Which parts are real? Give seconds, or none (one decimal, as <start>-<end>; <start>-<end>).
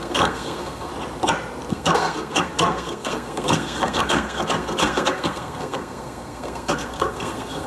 0.9-1.7